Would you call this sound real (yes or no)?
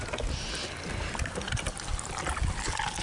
yes